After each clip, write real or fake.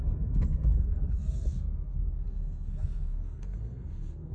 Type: fake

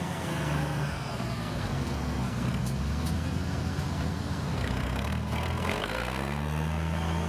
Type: fake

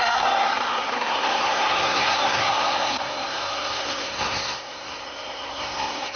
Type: fake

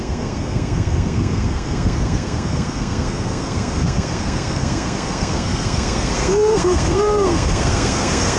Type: fake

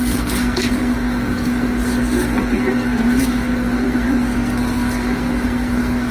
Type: fake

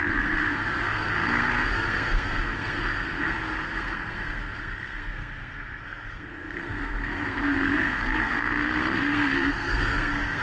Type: fake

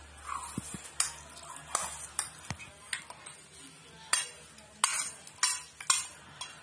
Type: real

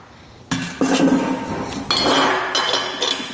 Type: real